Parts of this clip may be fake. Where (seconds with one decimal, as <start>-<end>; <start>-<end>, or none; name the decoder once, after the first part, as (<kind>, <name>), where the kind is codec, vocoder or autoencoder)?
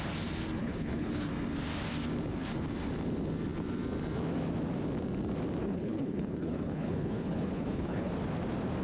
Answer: 0.6-1.3 (codec, HILCodec); 5.6-8.1